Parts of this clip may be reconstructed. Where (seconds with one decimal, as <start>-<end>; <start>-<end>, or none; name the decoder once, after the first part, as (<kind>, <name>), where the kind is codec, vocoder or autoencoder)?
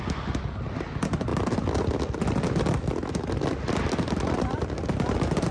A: 1.3-4.6 (vocoder, BigVGAN v2)